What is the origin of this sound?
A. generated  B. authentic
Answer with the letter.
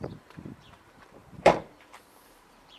A